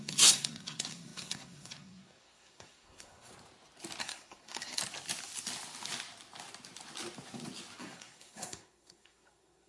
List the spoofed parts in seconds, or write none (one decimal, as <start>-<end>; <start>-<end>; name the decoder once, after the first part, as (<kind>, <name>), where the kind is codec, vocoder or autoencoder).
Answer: 0.0-3.3 (codec, SNAC); 4.0-4.8; 7.8-9.7

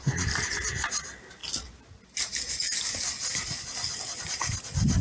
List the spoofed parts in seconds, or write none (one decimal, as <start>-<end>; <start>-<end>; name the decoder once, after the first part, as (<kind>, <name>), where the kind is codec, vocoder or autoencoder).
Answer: none

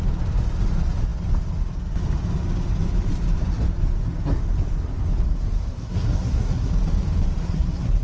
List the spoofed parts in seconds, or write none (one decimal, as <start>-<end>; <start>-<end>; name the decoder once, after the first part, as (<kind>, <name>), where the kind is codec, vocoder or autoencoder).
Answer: 5.7-6.7 (codec, SNAC); 7.4-8.0

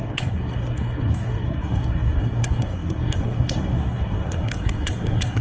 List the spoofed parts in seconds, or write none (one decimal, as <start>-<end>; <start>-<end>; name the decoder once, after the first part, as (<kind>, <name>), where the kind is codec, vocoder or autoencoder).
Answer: 0.0-5.4 (codec, SNAC)

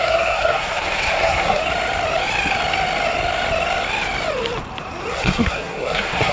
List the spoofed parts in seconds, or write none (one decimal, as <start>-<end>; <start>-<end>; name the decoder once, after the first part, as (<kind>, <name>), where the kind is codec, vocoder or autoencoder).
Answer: 0.0-1.6 (codec, SNAC); 5.1-6.3

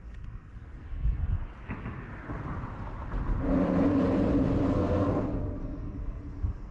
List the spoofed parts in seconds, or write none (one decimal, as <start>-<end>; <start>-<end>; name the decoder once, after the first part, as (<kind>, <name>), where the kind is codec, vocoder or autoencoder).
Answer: 0.0-1.4 (codec, SNAC); 4.7-6.7

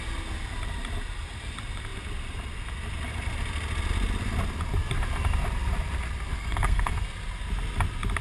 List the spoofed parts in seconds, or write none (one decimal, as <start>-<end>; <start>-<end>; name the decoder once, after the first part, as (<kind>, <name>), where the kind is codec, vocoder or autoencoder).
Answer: 6.4-7.0 (codec, SNAC)

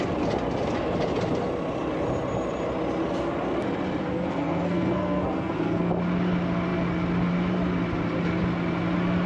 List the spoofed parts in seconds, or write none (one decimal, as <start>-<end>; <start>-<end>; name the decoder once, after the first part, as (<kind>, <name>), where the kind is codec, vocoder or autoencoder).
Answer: 4.0-5.9 (codec, SNAC)